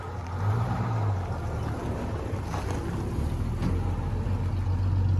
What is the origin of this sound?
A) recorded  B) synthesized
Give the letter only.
A